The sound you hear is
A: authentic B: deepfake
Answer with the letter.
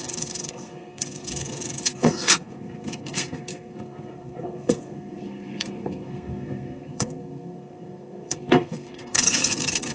B